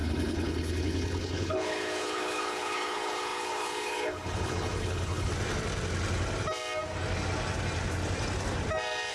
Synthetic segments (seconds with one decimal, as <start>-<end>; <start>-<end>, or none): 0.0-5.3